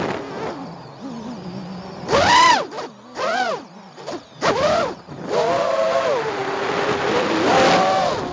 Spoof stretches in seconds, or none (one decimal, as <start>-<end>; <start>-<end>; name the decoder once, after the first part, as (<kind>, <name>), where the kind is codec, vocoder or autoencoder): none